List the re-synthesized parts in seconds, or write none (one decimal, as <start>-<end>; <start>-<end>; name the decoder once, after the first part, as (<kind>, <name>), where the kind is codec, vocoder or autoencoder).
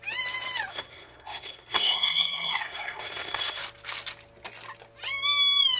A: 0.7-3.6 (codec, SNAC)